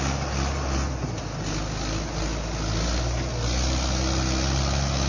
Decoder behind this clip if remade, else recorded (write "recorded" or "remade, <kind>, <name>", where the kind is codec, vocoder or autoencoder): recorded